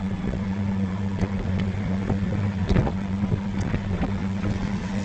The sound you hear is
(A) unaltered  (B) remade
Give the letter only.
B